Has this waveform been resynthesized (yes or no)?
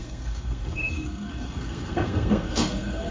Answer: yes